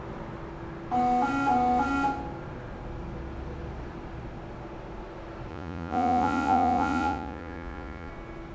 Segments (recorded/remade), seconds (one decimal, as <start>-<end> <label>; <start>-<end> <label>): 0.0-5.5 recorded; 5.5-8.1 remade; 8.1-8.5 recorded